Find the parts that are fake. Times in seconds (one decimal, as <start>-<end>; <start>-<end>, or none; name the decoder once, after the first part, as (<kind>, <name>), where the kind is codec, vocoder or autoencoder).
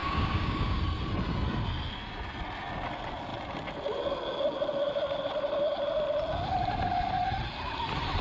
0.0-0.8 (codec, DAC)